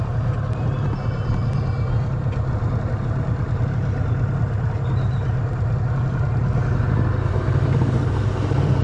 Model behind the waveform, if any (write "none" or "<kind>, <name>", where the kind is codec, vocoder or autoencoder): none